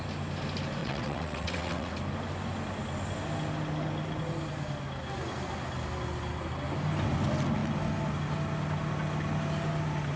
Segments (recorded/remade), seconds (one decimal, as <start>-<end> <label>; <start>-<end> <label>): 0.0-0.8 recorded; 0.8-1.9 remade; 1.9-10.2 recorded